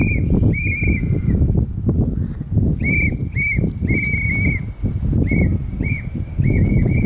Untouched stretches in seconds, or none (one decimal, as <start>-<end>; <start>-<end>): 0.0-7.1